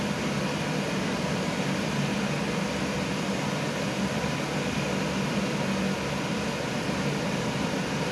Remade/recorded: recorded